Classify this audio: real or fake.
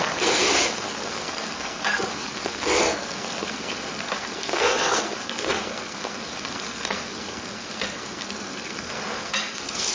fake